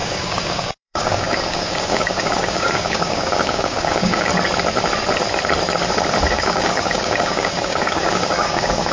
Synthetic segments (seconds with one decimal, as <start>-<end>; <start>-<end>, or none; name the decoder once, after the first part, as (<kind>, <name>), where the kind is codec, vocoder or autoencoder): 0.0-4.3 (codec, DAC); 6.3-8.9